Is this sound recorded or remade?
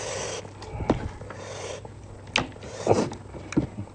recorded